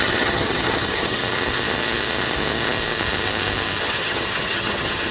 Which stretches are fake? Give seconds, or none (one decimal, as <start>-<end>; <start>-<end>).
0.0-1.2; 3.8-5.1